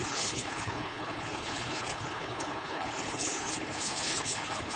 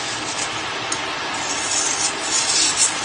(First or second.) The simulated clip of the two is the first